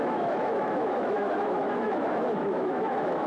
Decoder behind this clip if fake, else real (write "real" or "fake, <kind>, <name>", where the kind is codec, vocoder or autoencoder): fake, autoencoder, DAC-VAE